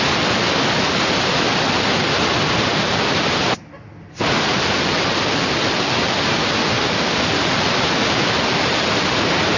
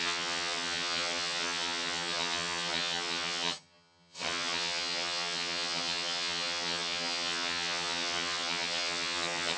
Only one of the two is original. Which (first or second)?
first